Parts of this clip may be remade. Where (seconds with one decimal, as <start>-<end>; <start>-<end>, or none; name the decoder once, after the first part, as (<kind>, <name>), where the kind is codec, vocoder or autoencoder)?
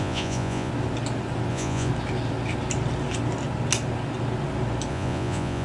0.0-0.7 (vocoder, Vocos); 1.5-1.9; 4.9-5.6